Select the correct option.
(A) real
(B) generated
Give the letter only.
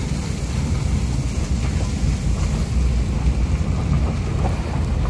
A